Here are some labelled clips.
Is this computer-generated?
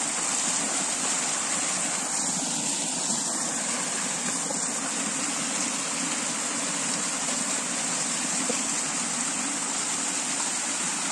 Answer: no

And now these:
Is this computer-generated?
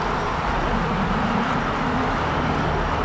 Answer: no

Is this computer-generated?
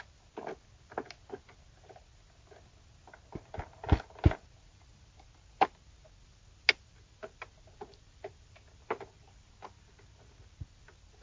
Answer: no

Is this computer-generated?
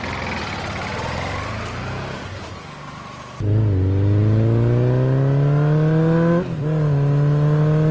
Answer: no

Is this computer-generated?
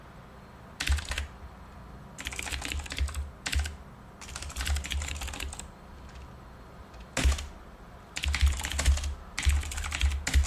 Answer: no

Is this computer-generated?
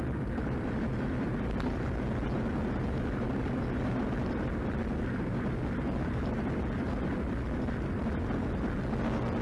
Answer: yes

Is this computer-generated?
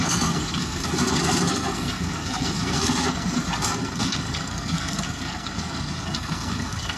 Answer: yes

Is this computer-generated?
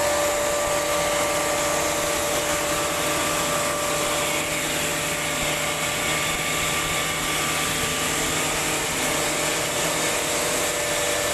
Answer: no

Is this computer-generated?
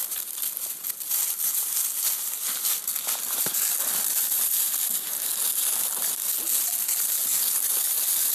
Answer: no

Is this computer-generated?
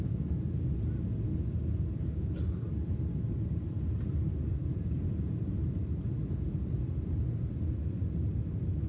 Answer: no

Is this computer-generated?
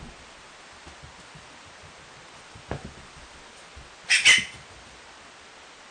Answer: no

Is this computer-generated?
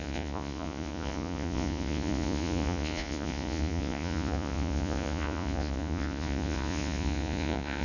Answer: yes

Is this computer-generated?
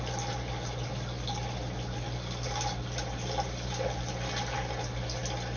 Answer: no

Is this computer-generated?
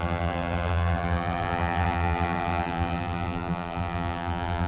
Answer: yes